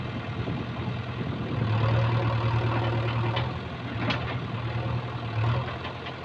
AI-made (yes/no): no